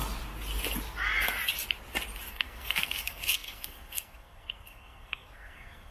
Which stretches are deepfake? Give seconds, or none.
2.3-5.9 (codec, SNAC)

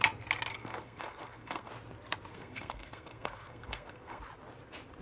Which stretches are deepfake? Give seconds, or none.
0.5-1.7 (codec, SNAC); 2.3-4.2

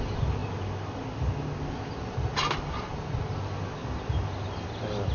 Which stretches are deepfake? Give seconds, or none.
none

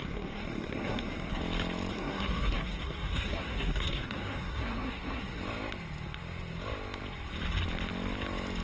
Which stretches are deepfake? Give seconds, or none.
0.0-1.4 (codec, SNAC); 1.9-5.4